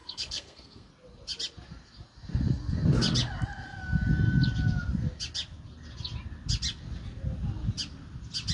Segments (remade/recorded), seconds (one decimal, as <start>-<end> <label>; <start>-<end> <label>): 0.0-0.9 remade; 0.9-8.5 recorded

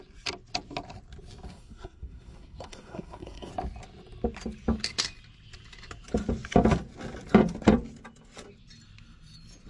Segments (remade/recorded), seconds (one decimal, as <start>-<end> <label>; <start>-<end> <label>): 0.0-1.5 recorded; 1.5-3.5 remade; 3.5-9.7 recorded

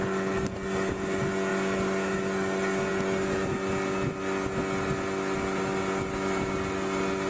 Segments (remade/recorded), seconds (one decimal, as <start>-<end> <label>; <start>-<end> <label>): 0.0-7.3 recorded

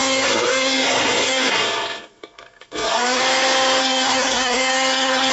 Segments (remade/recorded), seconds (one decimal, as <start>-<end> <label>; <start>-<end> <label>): 0.0-3.2 remade; 3.2-3.8 recorded; 3.8-5.3 remade

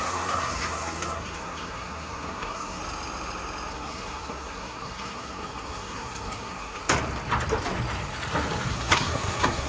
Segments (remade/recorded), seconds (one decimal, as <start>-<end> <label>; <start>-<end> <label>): 0.0-2.8 remade; 2.8-3.7 recorded; 3.7-6.8 remade; 6.8-8.7 recorded; 8.7-9.7 remade

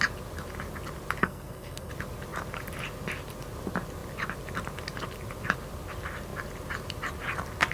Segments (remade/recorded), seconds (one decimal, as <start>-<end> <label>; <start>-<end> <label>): 0.0-1.2 recorded; 1.2-1.9 remade; 1.9-7.7 recorded

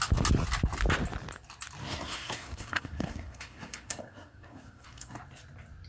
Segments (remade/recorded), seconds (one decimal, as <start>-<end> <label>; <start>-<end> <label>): 0.0-1.8 recorded; 1.8-5.2 remade; 5.2-5.9 recorded

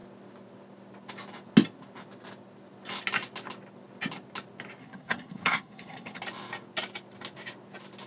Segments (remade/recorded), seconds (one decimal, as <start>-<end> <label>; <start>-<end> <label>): 0.0-4.8 recorded; 4.8-6.2 remade; 6.2-8.1 recorded